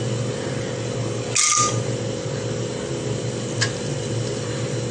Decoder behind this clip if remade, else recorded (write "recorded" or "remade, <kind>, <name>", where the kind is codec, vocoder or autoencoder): recorded